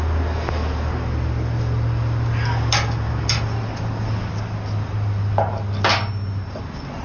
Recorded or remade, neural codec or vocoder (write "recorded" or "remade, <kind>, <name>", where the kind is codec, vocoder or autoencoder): recorded